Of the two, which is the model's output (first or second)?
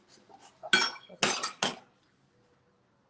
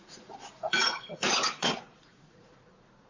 second